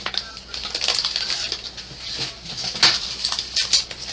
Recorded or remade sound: recorded